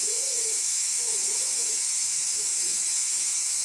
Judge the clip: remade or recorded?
remade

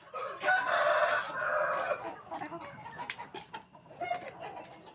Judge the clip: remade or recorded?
recorded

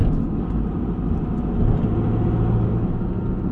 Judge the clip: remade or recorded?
recorded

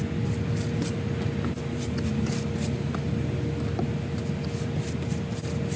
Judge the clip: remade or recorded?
recorded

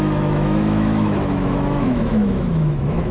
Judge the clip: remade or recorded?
remade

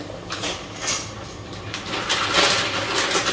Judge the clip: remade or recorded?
recorded